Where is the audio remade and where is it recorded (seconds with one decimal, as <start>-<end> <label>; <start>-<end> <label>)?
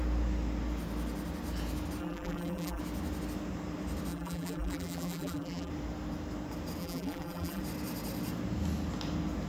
0.0-2.0 recorded; 2.0-2.8 remade; 2.8-4.1 recorded; 4.1-5.7 remade; 5.7-6.8 recorded; 6.8-7.6 remade; 7.6-9.5 recorded